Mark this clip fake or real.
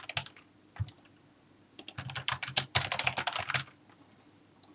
real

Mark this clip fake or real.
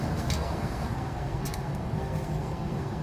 fake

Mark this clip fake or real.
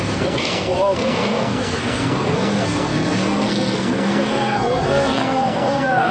fake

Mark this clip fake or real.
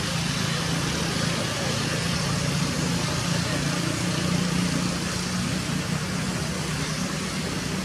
real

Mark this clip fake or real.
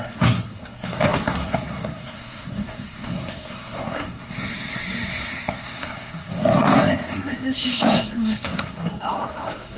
fake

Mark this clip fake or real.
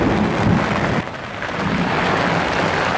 real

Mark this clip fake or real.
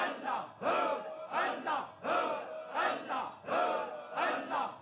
real